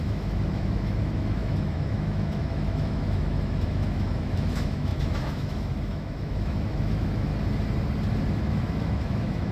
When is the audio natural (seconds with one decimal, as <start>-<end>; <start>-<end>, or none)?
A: 7.3-8.3